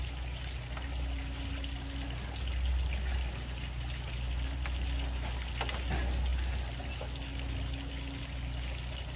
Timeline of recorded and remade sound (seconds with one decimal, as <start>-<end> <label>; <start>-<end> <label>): 0.0-9.2 recorded